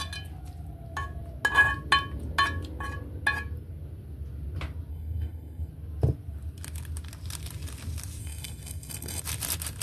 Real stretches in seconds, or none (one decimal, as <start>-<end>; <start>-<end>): 0.0-4.9; 5.7-8.2; 9.2-9.8